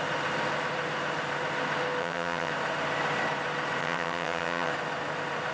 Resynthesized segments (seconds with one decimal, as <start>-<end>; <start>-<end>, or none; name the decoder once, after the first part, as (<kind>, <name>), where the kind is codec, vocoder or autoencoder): 2.0-2.5 (vocoder, HiFi-GAN); 3.8-4.7